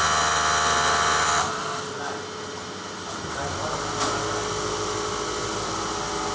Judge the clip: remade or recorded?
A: recorded